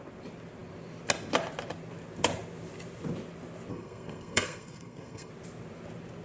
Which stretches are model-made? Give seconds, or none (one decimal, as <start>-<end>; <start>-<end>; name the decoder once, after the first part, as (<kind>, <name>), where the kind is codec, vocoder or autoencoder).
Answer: 3.7-5.3 (codec, SNAC)